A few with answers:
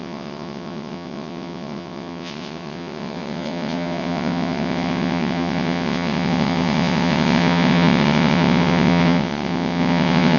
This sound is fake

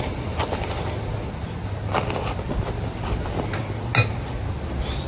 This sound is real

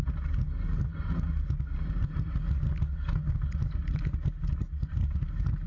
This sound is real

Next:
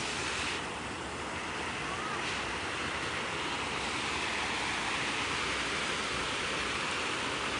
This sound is real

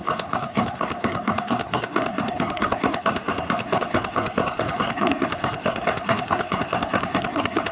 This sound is fake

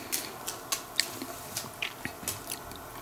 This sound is real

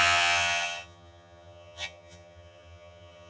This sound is fake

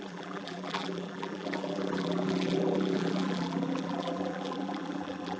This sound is fake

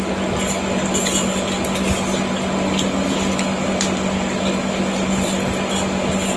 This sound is real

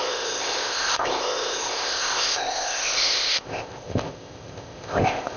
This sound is fake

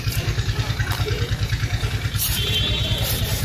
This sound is fake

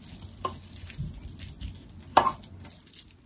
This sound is real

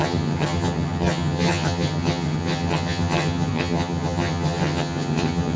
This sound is fake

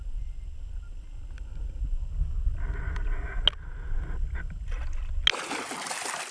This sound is real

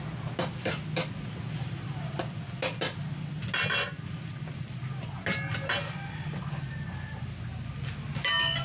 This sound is real